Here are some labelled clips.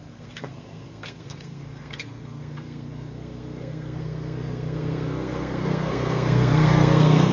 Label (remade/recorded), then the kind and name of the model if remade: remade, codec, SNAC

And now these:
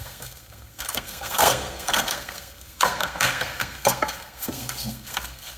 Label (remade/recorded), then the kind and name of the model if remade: remade, codec, SNAC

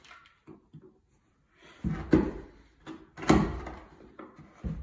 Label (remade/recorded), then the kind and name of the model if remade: recorded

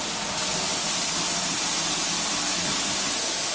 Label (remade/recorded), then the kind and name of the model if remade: recorded